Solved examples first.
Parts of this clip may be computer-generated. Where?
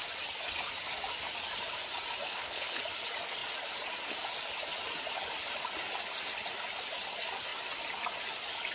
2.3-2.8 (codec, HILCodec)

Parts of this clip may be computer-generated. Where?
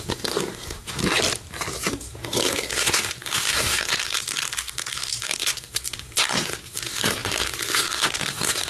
0.0-1.0 (codec, SNAC); 1.9-8.7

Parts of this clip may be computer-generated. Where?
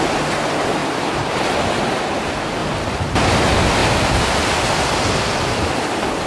0.8-1.6 (vocoder, BigVGAN v2); 2.6-3.4; 3.8-4.5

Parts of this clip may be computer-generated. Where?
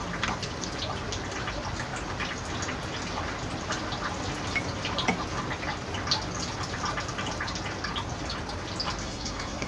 9.0-9.7 (codec, SNAC)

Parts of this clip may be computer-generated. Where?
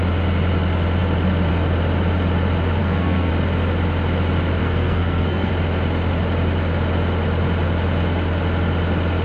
2.8-3.3 (codec, SNAC); 4.6-5.5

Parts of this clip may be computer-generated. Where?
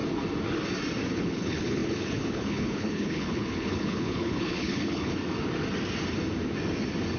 1.1-5.2 (codec, HILCodec)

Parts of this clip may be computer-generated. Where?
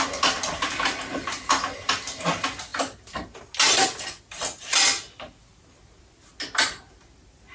none